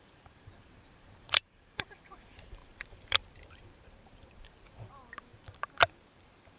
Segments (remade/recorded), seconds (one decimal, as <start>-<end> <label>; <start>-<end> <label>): 0.0-6.6 remade